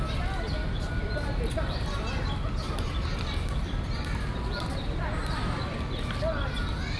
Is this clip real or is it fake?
real